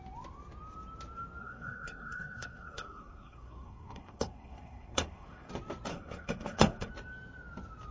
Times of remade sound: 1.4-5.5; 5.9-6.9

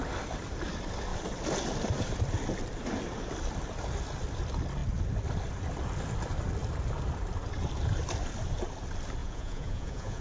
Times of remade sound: 9.2-10.2

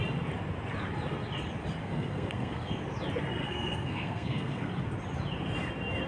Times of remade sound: 1.8-2.8; 3.4-4.7

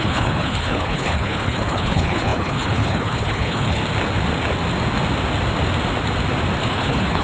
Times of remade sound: 0.0-3.8; 6.7-7.2

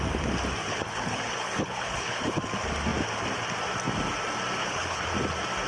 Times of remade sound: 0.6-2.4; 4.6-5.1

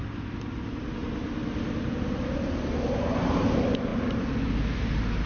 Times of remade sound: none